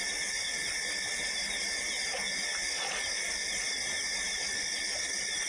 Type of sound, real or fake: real